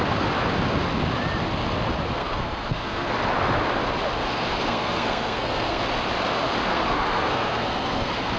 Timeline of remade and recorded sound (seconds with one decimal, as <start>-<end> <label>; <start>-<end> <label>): 0.0-2.2 recorded; 2.2-3.1 remade; 3.1-4.2 recorded; 4.2-5.8 remade; 5.8-6.7 recorded; 6.7-8.4 remade